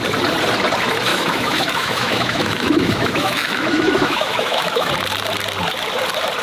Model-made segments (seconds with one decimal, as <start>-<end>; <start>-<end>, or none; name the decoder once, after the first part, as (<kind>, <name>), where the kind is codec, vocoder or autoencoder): 1.1-4.9 (autoencoder, DAC-VAE)